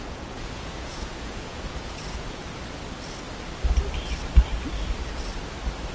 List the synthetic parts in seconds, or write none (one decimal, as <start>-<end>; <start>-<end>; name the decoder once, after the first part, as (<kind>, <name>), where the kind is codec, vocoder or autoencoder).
0.0-2.4 (vocoder, Vocos)